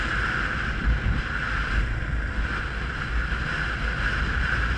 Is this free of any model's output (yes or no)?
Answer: yes